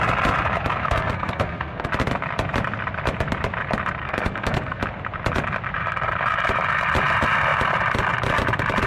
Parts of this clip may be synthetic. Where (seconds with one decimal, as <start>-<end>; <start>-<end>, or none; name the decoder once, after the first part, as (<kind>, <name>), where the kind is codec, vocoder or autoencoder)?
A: 0.8-1.9 (codec, SNAC); 4.0-4.8